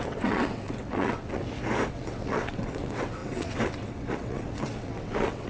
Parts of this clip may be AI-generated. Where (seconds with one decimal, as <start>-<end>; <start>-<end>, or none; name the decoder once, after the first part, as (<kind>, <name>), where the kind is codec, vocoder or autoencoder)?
0.0-1.4 (vocoder, WaveNeXt); 1.9-5.5